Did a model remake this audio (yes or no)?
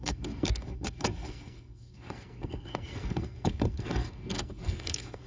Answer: yes